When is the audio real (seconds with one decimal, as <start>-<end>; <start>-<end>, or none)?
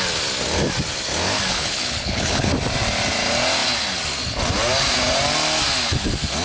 0.0-1.5; 2.5-6.4